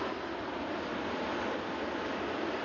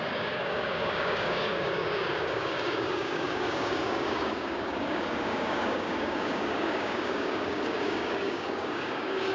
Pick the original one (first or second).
first